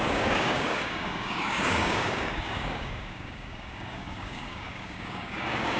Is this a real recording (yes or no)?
no